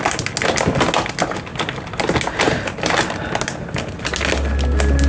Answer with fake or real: real